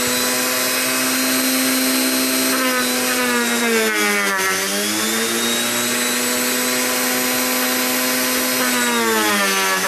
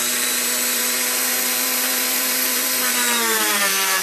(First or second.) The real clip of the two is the first